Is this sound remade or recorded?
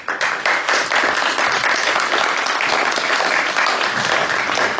recorded